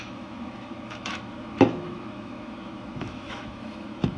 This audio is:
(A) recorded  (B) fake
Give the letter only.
B